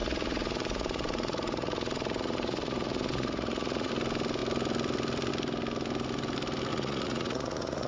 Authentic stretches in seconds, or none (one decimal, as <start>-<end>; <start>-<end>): 3.9-6.7